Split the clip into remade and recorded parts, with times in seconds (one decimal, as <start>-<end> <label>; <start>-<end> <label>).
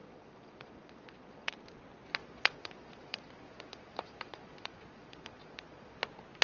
0.0-1.5 remade; 1.5-2.2 recorded; 2.2-6.0 remade; 6.0-6.4 recorded